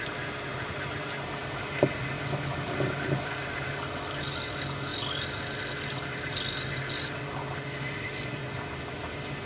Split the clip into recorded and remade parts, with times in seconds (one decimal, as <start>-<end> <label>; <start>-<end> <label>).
0.0-9.5 recorded